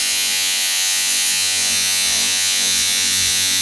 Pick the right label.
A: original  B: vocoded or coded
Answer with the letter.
B